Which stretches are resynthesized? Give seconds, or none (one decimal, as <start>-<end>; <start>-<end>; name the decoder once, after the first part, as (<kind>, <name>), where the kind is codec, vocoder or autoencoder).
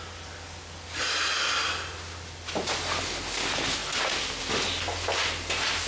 none